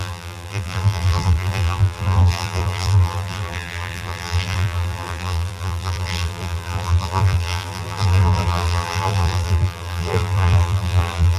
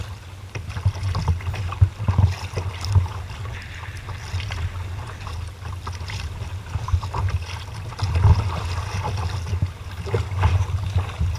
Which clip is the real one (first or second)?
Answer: second